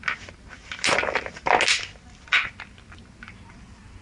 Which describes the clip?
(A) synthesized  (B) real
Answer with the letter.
B